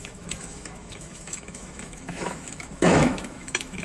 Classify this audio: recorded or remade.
remade